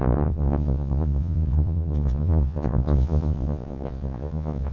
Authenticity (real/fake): fake